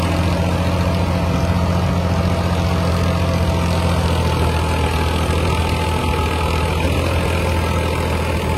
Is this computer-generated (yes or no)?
no